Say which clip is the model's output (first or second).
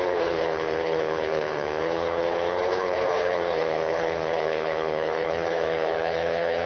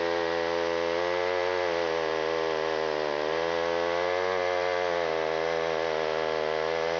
first